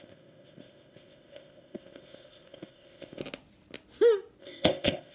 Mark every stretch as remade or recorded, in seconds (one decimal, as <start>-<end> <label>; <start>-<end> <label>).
0.0-3.2 remade; 3.2-4.4 recorded; 4.4-5.1 remade